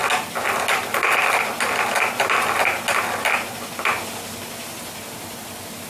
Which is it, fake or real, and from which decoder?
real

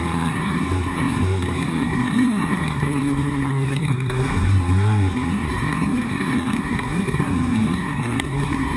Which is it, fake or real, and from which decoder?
fake, codec, SNAC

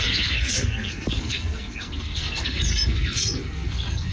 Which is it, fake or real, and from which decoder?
fake, codec, SNAC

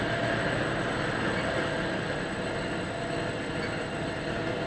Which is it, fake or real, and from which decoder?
real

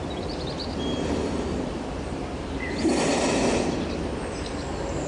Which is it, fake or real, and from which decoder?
real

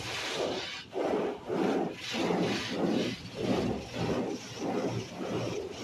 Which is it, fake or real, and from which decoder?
real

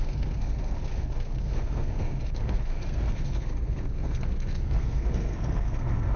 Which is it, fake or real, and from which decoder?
fake, codec, SNAC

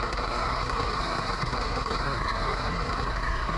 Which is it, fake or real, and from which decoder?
fake, codec, SNAC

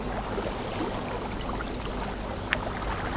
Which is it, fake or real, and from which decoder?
real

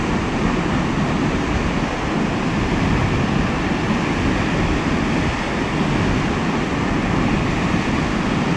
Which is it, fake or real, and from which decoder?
real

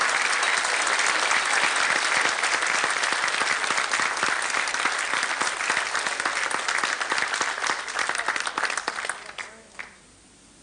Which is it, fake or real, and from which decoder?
real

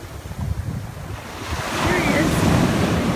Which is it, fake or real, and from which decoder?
real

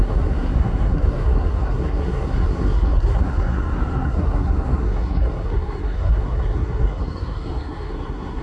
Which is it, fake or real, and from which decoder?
fake, codec, SNAC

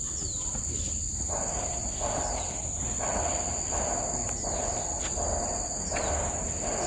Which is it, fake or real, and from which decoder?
real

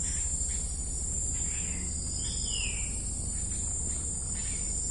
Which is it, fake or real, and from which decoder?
real